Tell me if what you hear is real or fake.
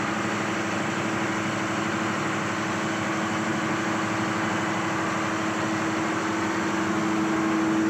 real